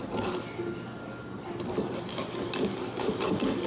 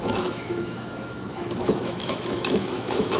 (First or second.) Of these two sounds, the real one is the first